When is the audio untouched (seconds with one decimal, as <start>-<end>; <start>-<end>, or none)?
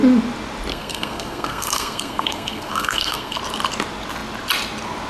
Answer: 0.0-0.7; 3.4-5.1